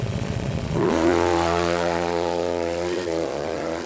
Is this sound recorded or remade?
remade